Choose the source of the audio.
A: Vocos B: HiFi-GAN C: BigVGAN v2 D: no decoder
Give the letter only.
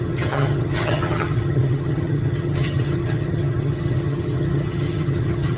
B